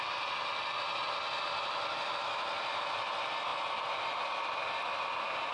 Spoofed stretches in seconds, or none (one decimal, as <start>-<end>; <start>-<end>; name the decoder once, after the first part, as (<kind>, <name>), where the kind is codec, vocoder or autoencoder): none